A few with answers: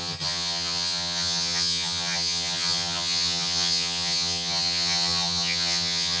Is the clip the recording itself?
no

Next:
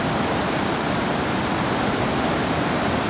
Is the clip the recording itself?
yes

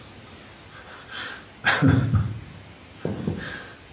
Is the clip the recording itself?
yes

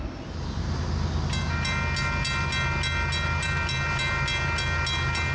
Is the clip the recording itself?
yes